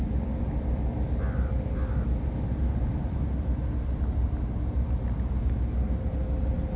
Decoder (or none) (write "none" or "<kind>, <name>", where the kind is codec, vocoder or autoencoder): none